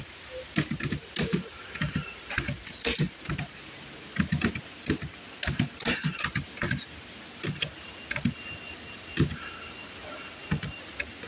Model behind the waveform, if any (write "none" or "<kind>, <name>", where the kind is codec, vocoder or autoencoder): none